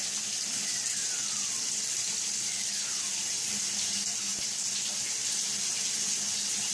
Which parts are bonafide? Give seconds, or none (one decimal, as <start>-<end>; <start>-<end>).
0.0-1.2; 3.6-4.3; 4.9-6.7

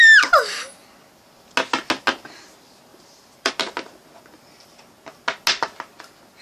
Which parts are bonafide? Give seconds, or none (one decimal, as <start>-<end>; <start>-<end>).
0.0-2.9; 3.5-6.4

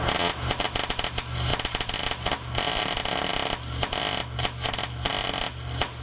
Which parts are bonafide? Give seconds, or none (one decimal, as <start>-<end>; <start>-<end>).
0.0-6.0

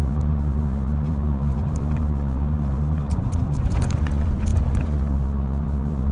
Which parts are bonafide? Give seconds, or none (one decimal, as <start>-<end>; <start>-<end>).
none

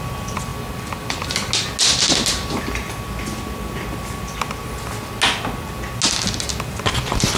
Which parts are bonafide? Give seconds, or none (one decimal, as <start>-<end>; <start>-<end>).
0.0-7.4

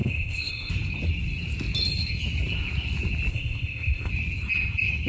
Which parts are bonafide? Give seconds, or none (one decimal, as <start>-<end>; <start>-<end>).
0.7-3.3; 4.1-5.1